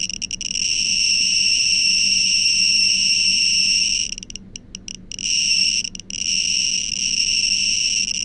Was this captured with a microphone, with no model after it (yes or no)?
yes